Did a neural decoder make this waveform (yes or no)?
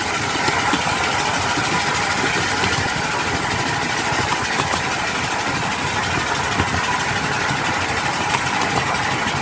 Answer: no